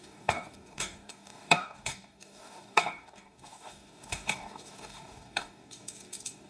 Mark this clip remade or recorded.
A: remade